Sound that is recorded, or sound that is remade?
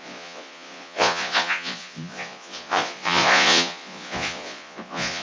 remade